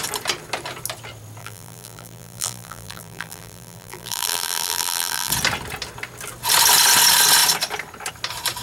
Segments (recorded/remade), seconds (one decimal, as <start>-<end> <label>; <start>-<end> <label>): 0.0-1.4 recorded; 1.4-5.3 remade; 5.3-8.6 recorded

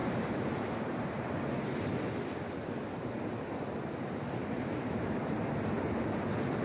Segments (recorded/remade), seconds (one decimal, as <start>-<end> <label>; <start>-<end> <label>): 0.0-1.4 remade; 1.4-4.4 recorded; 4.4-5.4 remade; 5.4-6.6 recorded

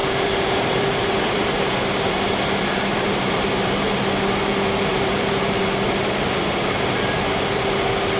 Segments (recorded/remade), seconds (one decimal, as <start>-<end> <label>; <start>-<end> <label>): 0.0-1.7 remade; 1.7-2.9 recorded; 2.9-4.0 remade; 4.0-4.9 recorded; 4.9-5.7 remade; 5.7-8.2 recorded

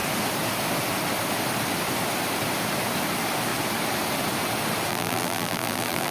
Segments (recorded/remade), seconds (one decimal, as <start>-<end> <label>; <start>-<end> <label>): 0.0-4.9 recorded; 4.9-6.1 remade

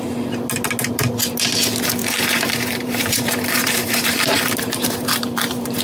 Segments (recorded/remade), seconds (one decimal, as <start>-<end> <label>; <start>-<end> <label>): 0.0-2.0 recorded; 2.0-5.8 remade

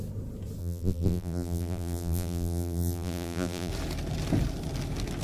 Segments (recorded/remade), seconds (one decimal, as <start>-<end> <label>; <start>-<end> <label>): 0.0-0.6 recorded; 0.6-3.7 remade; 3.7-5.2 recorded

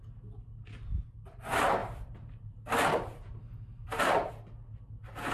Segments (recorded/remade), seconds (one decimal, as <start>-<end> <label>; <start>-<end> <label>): 0.0-1.8 recorded; 1.8-4.3 remade; 4.3-5.3 recorded